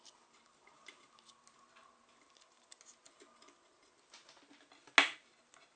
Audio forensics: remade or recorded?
recorded